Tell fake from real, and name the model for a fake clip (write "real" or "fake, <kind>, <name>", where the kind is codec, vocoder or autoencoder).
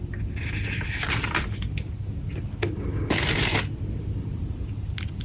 real